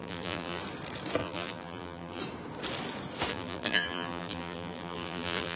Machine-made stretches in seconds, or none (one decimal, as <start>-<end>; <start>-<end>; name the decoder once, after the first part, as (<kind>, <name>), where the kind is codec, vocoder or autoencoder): 0.0-0.6 (vocoder, BigVGAN v2); 1.2-2.2; 3.3-5.6